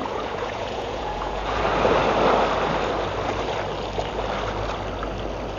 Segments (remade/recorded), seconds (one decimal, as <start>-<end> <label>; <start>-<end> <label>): 0.0-1.6 remade; 1.6-5.6 recorded